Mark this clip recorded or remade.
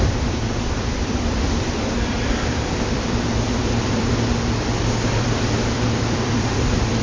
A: remade